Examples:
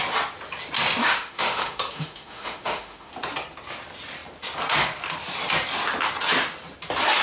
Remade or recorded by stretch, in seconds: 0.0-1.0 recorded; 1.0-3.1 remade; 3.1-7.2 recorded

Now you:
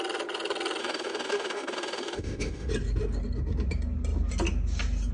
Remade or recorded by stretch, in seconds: 0.0-0.8 recorded; 0.8-2.7 remade; 2.7-5.1 recorded

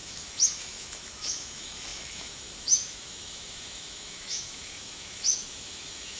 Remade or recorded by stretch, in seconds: 0.0-6.2 remade

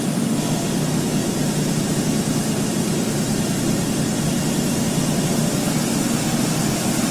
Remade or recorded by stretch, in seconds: 0.0-7.1 recorded

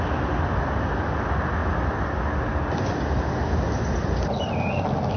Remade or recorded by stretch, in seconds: 0.0-5.2 recorded